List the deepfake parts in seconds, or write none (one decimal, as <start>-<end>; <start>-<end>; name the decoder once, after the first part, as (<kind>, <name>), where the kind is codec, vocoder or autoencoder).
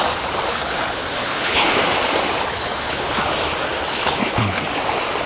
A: 0.5-1.7 (codec, HILCodec); 2.5-3.3; 3.9-4.6